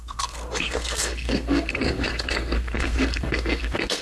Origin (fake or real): fake